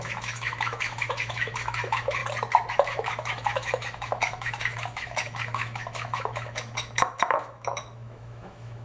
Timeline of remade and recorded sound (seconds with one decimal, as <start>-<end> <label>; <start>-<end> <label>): 0.0-2.2 remade; 2.2-2.7 recorded; 2.7-8.8 remade

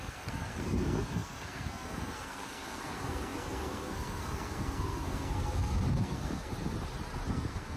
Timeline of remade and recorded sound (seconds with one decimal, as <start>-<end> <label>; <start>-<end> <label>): 0.0-6.5 remade; 6.5-7.3 recorded; 7.3-7.8 remade

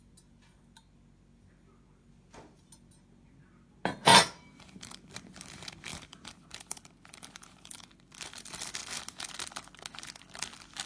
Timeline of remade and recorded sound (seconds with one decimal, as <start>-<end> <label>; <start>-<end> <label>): 0.0-4.1 recorded; 4.1-5.1 remade; 5.1-5.9 recorded; 5.9-7.9 remade; 7.9-10.9 recorded

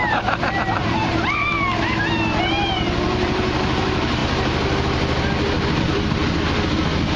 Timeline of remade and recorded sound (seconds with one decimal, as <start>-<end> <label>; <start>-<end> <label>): 0.0-1.5 remade; 1.5-2.4 recorded; 2.4-4.2 remade; 4.2-5.8 recorded; 5.8-6.2 remade; 6.2-7.2 recorded